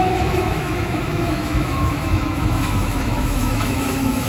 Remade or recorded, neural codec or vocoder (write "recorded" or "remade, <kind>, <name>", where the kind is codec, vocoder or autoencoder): remade, autoencoder, DAC-VAE